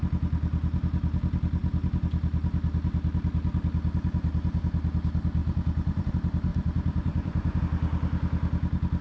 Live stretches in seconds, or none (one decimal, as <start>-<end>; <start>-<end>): 0.0-5.4; 6.1-6.5; 7.6-9.0